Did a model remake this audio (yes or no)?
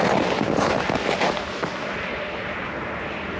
no